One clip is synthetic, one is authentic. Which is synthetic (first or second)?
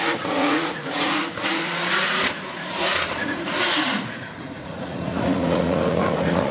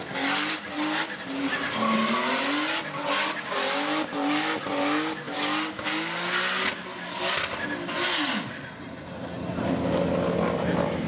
first